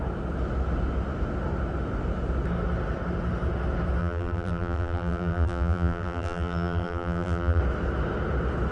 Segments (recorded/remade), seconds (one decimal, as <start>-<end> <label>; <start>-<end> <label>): 0.0-4.0 recorded; 4.0-7.6 remade; 7.6-8.7 recorded